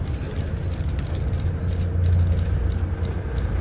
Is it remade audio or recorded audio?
recorded